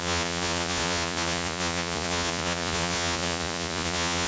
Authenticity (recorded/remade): remade